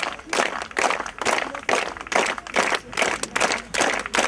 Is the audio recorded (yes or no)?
yes